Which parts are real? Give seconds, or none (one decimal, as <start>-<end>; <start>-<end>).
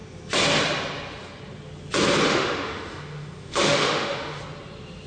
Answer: 0.0-2.3; 4.4-5.1